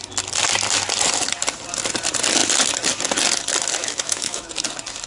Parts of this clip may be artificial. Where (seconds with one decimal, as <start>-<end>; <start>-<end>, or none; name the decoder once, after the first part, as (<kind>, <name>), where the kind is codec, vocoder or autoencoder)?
3.8-4.5 (autoencoder, DAC-VAE)